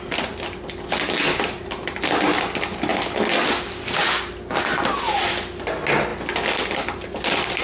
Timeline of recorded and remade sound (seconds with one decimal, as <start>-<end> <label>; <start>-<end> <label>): 0.0-7.6 recorded